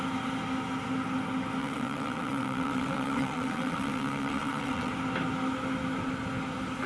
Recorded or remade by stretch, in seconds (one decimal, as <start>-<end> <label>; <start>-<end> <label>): 0.0-1.6 recorded; 1.6-4.9 remade; 4.9-6.9 recorded